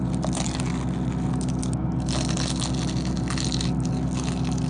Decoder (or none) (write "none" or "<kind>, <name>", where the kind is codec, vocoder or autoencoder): none